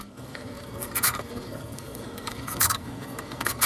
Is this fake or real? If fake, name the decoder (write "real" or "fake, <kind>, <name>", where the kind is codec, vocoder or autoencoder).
fake, codec, SNAC